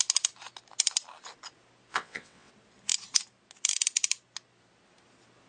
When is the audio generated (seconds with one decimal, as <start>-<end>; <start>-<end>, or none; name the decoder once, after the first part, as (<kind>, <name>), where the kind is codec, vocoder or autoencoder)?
1.9-2.5 (vocoder, WaveNeXt)